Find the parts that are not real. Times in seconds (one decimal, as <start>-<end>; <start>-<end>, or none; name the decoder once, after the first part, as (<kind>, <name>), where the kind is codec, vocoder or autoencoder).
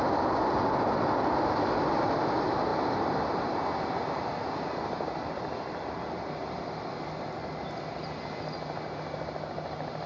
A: none